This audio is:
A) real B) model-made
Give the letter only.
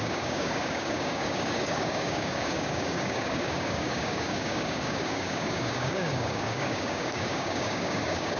B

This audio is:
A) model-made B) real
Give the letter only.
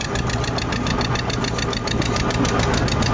B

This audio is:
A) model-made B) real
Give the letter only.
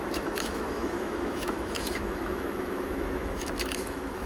A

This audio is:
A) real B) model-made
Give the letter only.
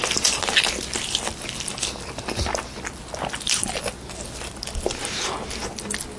A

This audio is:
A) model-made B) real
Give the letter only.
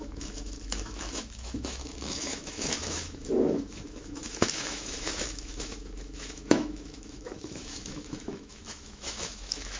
A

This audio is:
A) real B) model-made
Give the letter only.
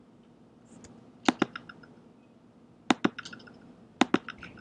A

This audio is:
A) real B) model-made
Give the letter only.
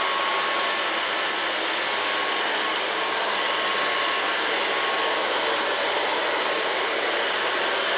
A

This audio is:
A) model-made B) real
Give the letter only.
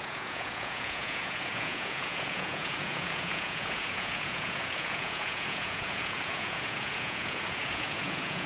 A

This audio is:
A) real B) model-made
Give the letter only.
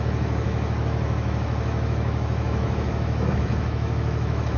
B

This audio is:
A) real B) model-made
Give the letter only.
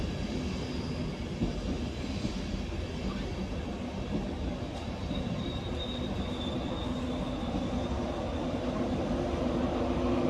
A